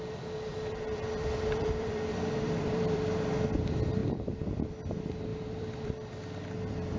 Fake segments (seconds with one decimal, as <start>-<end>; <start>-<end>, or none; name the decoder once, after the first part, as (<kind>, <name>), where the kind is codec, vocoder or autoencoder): 0.5-3.2 (vocoder, BigVGAN v2); 4.0-4.7; 5.3-5.9